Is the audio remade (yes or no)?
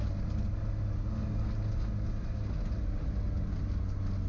no